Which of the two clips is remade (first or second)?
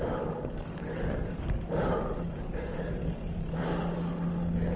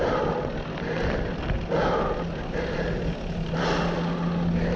first